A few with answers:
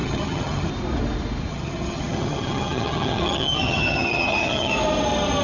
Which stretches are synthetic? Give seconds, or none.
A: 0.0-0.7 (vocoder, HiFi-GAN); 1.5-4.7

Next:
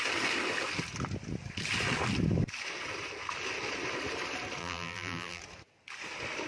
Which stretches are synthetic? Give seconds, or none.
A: 4.6-5.4 (vocoder, BigVGAN v2)

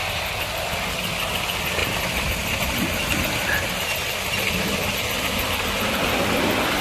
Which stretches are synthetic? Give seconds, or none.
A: none

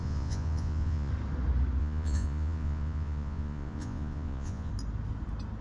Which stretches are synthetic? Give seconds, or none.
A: 0.0-1.1 (vocoder, Vocos); 1.8-4.7

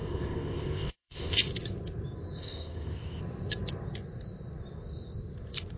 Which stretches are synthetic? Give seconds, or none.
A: 0.0-1.5 (codec, ZipCodec); 2.4-3.2

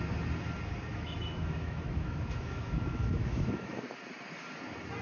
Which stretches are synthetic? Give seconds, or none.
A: 0.9-3.9 (autoencoder, DAC-VAE)